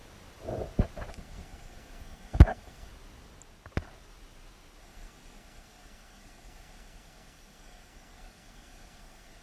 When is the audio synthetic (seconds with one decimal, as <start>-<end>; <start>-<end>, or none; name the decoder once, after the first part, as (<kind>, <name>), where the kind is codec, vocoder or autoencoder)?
1.1-2.9 (codec, SNAC); 4.8-9.4